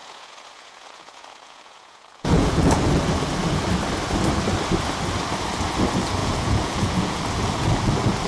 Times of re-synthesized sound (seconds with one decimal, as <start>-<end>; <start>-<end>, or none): 0.0-2.8; 6.2-7.2